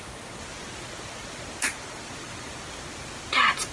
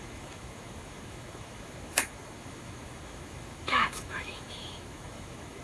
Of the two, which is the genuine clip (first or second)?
first